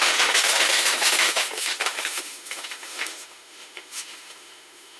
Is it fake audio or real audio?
fake